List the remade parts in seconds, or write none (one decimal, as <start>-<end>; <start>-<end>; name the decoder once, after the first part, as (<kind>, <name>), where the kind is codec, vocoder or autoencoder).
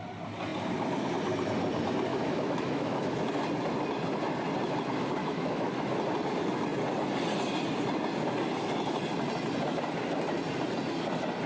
2.1-3.1 (autoencoder, DAC-VAE); 5.2-5.9